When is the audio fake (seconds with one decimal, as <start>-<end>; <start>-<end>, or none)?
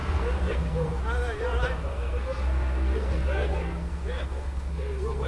0.0-1.0; 1.9-5.3